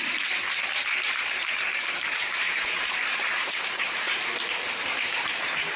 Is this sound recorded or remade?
remade